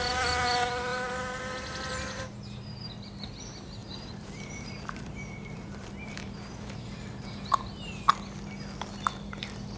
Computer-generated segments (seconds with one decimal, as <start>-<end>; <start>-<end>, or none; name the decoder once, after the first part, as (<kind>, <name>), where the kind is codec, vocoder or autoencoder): 0.9-1.4 (vocoder, BigVGAN v2); 1.9-2.9; 3.8-8.1